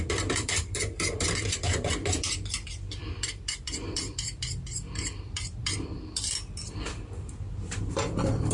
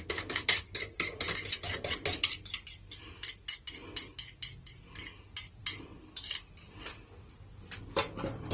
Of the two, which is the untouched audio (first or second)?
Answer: second